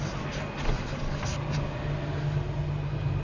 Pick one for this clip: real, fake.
real